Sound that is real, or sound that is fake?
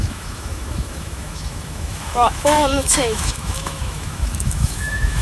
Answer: fake